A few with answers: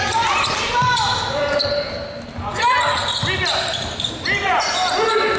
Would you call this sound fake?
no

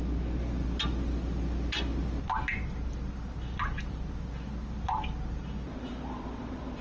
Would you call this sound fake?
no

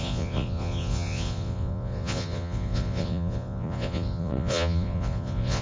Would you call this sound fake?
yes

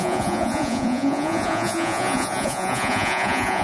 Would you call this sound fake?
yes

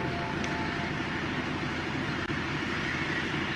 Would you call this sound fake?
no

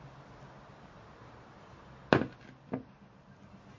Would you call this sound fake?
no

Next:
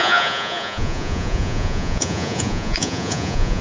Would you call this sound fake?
yes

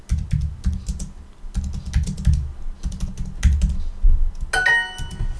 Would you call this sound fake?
no